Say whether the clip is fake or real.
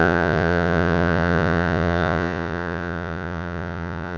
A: fake